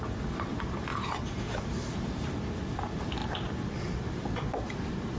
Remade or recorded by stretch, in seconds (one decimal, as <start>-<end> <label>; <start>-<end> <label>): 0.0-3.2 remade; 3.2-4.1 recorded; 4.1-5.2 remade